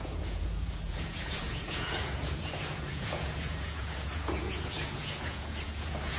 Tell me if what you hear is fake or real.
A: fake